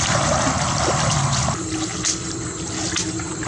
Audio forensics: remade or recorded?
recorded